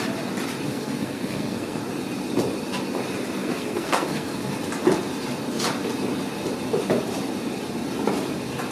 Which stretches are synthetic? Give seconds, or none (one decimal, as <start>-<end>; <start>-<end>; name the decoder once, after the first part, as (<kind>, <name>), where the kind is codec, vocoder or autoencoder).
0.7-1.8 (codec, SNAC); 3.4-4.5